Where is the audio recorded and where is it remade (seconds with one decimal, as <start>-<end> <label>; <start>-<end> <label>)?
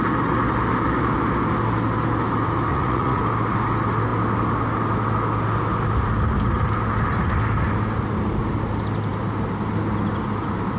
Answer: 0.0-2.7 recorded; 2.7-3.2 remade; 3.2-10.8 recorded